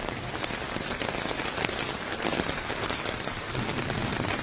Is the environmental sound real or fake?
real